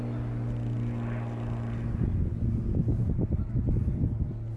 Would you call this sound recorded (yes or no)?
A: yes